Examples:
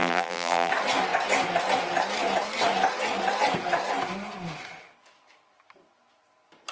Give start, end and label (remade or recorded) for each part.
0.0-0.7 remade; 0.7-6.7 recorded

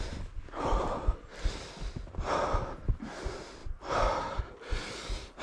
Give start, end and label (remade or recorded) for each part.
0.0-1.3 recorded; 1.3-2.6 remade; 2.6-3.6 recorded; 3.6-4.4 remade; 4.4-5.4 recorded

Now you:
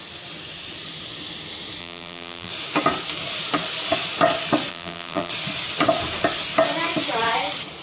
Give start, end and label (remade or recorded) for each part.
0.0-1.8 recorded; 1.8-2.5 remade; 2.5-4.7 recorded; 4.7-5.3 remade; 5.3-7.8 recorded

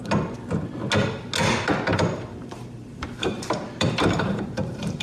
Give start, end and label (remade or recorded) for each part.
0.0-1.9 recorded; 1.9-5.0 remade